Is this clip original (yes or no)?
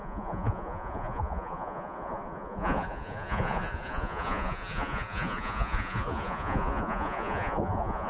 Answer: no